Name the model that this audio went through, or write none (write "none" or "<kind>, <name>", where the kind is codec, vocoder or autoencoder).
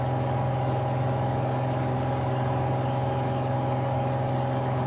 codec, DAC